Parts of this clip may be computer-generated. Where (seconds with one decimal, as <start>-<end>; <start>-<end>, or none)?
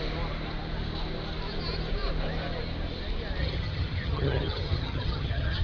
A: 3.4-5.6